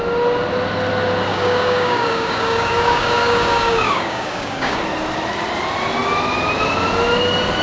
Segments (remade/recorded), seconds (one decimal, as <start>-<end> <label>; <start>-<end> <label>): 0.0-1.3 recorded; 1.3-4.8 remade; 4.8-7.6 recorded